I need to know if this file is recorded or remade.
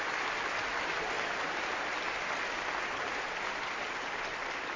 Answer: recorded